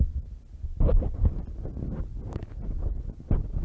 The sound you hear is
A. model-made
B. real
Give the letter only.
B